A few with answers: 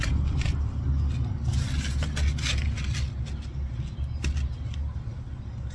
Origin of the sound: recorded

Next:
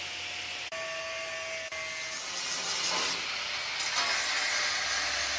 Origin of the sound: recorded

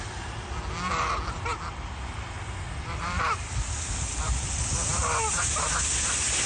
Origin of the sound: recorded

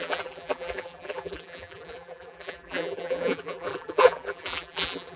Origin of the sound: remade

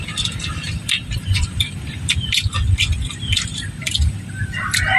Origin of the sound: remade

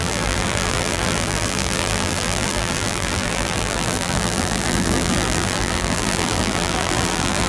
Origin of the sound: remade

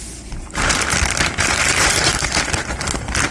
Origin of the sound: remade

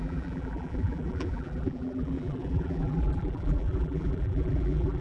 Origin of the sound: remade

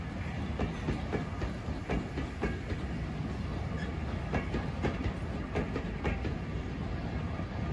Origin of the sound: recorded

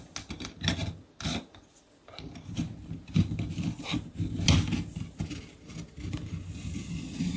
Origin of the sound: recorded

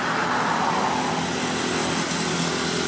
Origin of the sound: recorded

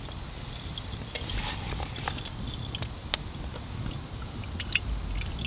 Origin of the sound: recorded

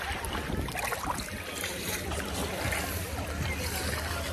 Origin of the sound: recorded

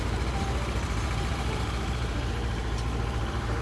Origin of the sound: remade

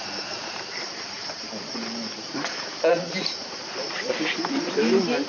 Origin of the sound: remade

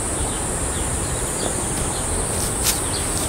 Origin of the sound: recorded